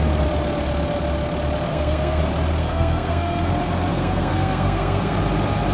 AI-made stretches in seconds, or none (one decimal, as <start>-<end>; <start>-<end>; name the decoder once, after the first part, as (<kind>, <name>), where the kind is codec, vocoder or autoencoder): 1.7-2.2 (codec, SNAC); 2.6-3.5; 3.9-5.2